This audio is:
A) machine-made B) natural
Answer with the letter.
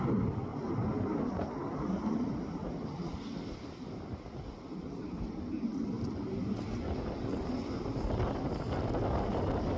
B